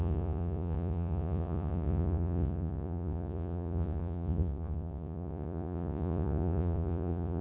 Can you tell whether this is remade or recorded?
remade